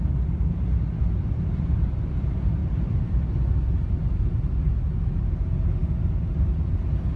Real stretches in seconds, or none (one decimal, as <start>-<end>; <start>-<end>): 0.0-7.2